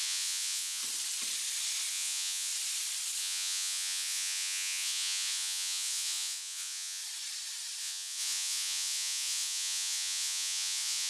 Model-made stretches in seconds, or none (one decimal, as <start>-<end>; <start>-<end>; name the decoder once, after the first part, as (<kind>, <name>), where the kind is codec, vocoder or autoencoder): 0.0-0.8 (vocoder, Vocos); 1.9-2.5; 3.2-7.0; 7.8-11.1